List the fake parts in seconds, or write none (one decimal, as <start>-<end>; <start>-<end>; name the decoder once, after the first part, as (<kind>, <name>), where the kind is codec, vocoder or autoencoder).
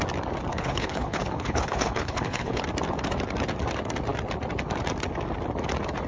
0.5-2.6 (codec, HILCodec)